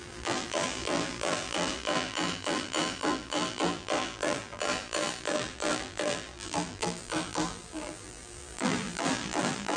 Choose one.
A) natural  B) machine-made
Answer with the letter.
B